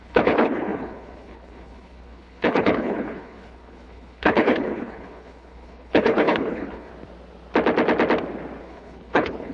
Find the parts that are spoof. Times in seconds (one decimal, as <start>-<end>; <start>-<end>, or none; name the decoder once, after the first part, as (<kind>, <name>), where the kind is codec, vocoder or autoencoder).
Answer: 0.0-6.9 (codec, HILCodec); 8.6-9.5